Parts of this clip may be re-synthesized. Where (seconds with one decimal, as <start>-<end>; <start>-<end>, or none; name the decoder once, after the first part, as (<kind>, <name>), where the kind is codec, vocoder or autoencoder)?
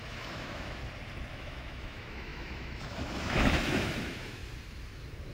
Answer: 0.0-0.8 (autoencoder, DAC-VAE); 1.3-4.4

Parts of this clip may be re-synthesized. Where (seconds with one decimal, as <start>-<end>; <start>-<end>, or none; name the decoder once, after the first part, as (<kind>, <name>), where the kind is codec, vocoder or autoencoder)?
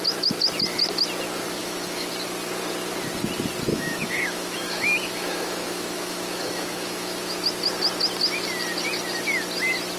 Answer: 1.6-2.1 (autoencoder, DAC-VAE); 3.7-7.4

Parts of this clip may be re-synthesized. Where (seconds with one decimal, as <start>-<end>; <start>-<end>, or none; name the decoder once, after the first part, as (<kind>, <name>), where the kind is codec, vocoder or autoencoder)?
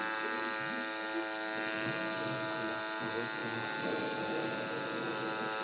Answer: none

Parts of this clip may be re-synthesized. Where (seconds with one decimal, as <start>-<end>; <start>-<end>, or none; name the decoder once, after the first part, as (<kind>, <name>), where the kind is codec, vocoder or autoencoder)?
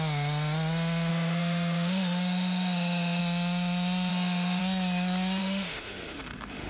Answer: 1.1-3.2 (autoencoder, DAC-VAE); 4.1-4.6; 5.4-6.7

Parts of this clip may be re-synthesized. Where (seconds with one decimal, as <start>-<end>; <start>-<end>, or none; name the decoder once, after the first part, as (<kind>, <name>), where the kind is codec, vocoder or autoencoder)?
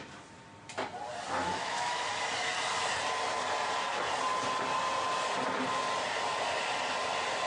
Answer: 1.4-2.1 (autoencoder, DAC-VAE)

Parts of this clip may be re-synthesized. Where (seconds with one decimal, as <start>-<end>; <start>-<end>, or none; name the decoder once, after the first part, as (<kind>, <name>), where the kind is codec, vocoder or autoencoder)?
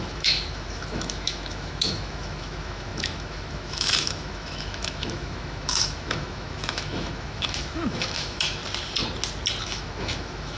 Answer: 0.0-8.6 (autoencoder, DAC-VAE); 9.6-10.6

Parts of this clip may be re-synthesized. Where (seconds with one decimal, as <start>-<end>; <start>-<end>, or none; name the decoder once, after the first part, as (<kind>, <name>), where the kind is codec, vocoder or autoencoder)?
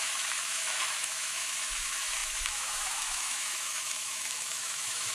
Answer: 0.0-5.1 (autoencoder, DAC-VAE)